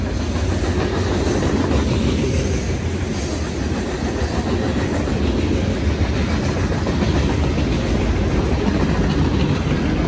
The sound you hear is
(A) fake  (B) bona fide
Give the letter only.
B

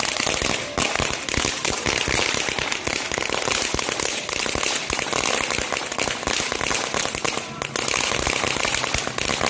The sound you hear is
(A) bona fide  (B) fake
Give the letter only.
A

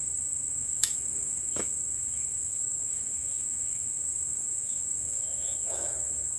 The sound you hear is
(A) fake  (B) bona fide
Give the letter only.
A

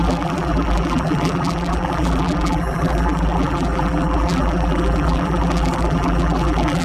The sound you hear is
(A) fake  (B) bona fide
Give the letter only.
A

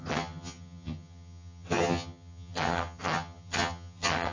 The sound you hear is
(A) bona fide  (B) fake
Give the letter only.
B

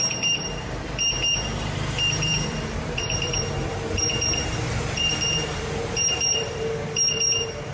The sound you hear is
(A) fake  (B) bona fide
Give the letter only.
A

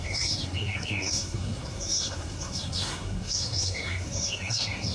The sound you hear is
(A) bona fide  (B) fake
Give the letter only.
B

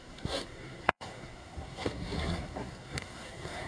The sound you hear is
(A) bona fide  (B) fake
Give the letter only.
B